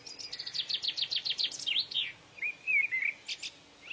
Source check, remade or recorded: recorded